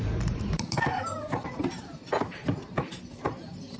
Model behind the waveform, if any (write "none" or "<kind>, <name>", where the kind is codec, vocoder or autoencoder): vocoder, BigVGAN v2